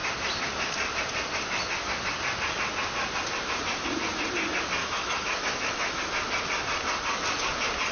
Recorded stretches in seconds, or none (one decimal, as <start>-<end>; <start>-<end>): 0.0-4.8; 6.0-7.9